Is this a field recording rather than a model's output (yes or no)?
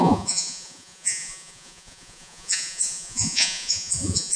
no